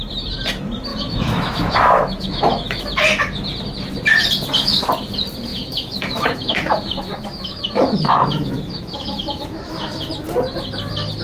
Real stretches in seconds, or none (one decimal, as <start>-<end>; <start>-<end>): 0.0-0.9; 2.8-5.5; 10.1-11.2